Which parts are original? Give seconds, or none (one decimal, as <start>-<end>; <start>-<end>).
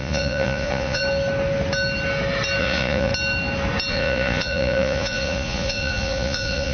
1.0-2.6; 3.1-3.9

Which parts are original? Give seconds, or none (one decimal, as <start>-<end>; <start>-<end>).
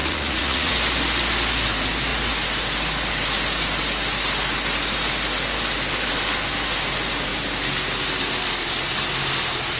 0.7-9.8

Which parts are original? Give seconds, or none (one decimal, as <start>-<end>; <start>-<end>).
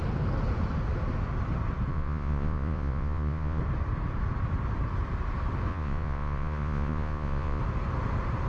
0.0-1.9; 3.6-5.7; 7.6-8.5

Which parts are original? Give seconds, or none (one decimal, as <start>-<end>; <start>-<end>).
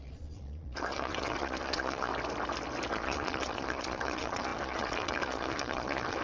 2.1-2.9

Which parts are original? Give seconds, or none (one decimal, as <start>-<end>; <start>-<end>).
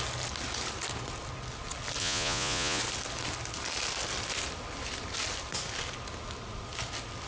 0.0-2.0; 2.8-7.3